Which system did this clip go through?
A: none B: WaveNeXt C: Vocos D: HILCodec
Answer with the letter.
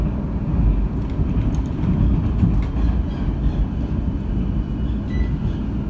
A